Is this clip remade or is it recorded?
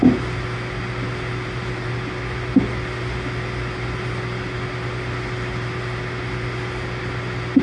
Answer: recorded